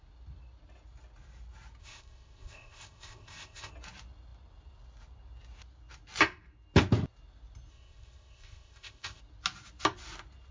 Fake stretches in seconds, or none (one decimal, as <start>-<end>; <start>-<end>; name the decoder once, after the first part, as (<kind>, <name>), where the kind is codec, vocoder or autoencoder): 1.8-3.7 (codec, ZipCodec); 7.7-9.2